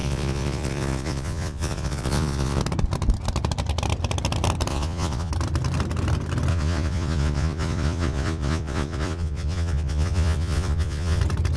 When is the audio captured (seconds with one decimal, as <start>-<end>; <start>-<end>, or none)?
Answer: 2.6-4.7; 5.3-6.5; 11.2-11.6

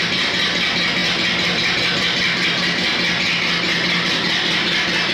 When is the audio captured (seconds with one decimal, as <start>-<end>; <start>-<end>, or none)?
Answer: 0.0-5.1

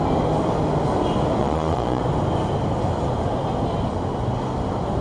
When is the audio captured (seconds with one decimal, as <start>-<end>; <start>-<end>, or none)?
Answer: 0.0-1.4; 2.0-5.0

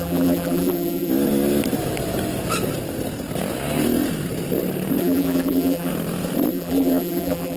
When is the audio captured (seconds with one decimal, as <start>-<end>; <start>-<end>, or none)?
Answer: 1.1-5.0; 5.9-6.5

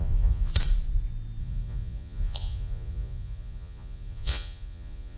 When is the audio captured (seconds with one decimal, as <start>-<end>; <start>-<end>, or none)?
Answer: 0.5-1.4

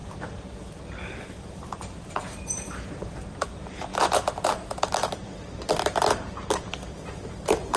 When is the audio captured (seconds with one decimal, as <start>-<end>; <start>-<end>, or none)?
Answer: 0.0-0.8